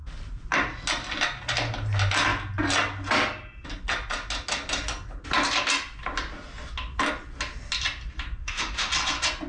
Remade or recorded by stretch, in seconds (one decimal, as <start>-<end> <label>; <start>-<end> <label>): 0.0-8.4 recorded; 8.4-8.9 remade; 8.9-9.5 recorded